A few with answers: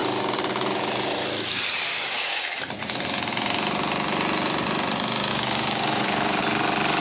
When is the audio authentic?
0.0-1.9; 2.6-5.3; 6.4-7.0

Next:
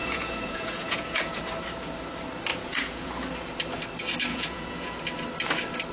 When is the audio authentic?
1.4-2.5; 3.1-4.3; 5.0-5.9

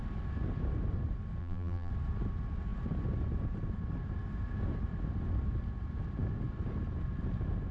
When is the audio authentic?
0.0-1.4; 1.9-7.7

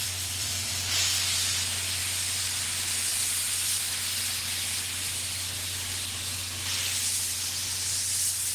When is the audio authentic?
0.7-2.0; 2.6-3.1; 3.8-8.5

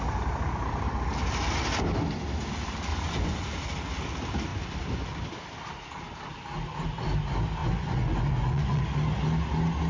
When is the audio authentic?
0.0-2.9; 3.5-7.6; 8.8-9.9

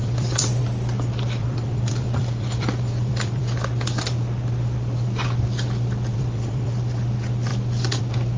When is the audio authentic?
0.6-1.4; 3.4-6.1; 6.8-8.4

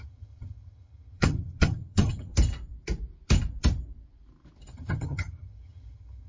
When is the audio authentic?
2.3-4.7

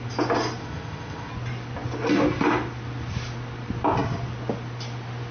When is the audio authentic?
0.0-0.6; 1.3-5.3